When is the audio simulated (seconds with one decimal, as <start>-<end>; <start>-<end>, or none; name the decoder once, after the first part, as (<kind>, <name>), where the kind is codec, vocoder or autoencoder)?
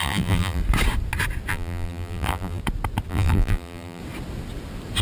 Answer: 0.0-0.6 (vocoder, BigVGAN v2); 1.5-2.6; 3.1-4.0